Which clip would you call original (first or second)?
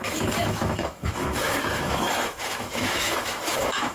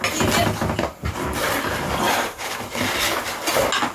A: second